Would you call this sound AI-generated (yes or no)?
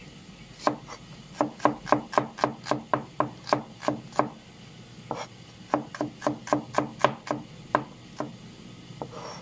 no